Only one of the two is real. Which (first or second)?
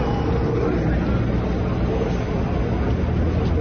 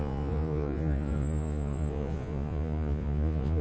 first